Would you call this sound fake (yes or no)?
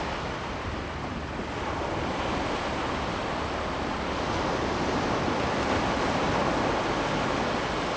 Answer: no